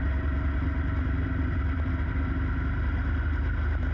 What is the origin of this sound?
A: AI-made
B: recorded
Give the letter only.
B